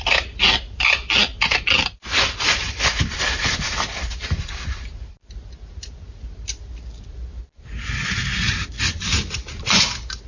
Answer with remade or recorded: recorded